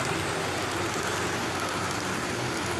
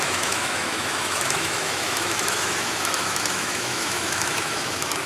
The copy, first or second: second